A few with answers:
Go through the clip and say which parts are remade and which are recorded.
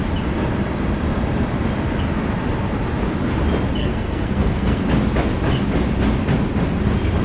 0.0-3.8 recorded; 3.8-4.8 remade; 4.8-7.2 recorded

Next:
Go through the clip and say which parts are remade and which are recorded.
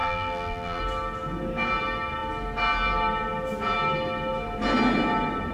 0.0-0.8 remade; 0.8-5.5 recorded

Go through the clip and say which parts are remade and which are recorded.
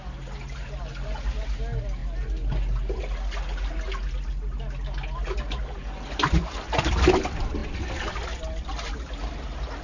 0.0-9.8 recorded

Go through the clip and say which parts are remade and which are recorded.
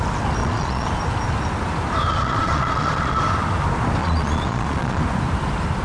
0.0-0.4 recorded; 0.4-0.9 remade; 0.9-2.1 recorded; 2.1-3.2 remade; 3.2-4.0 recorded; 4.0-5.0 remade; 5.0-5.8 recorded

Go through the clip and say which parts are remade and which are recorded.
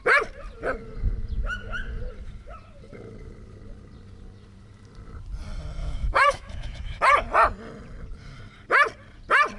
0.0-5.8 recorded; 5.8-7.0 remade; 7.0-9.6 recorded